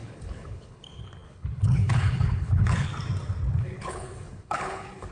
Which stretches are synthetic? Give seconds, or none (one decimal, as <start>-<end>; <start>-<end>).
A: 0.0-2.9; 3.6-5.1